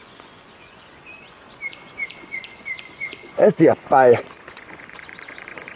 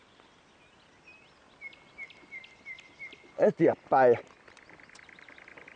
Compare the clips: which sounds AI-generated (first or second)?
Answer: first